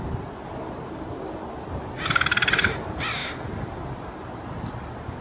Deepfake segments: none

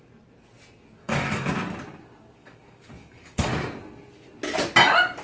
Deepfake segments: 1.0-1.5 (codec, DAC); 2.4-3.5

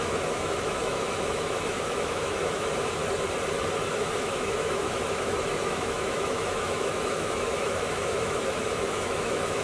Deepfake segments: 0.0-3.0 (autoencoder, DAC-VAE); 3.9-9.6

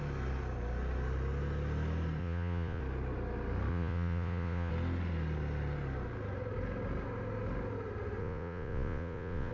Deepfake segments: 2.2-2.8 (vocoder, Vocos); 3.7-4.7; 8.2-9.5

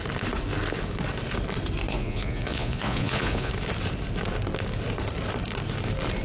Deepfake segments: 1.9-3.5 (vocoder, Vocos)